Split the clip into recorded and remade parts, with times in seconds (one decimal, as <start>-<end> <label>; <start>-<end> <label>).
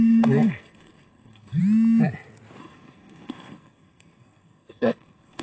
0.0-1.6 remade; 1.6-2.6 recorded; 2.6-5.4 remade